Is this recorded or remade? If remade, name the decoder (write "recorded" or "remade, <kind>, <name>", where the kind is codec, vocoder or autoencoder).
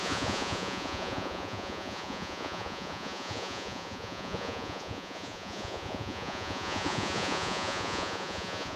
remade, vocoder, Vocos